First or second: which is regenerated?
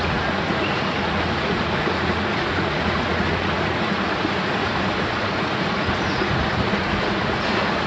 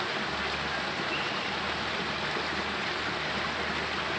first